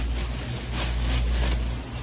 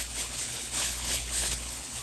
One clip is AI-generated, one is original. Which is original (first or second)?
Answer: first